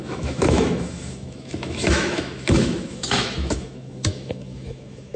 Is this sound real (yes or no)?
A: no